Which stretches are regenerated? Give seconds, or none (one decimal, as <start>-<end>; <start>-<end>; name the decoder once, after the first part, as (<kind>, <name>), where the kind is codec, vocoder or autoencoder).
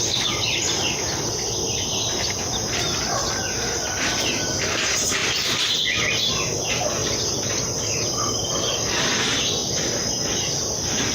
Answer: none